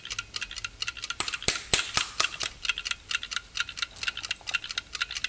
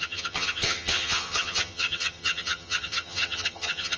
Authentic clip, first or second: first